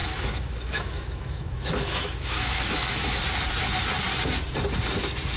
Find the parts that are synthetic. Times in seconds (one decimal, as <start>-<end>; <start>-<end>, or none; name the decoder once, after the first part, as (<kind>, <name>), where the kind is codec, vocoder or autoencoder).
0.0-3.2 (autoencoder, DAC-VAE)